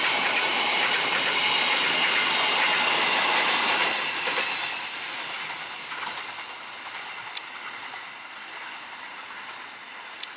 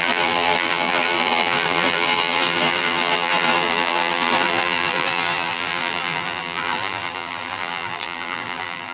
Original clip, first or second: first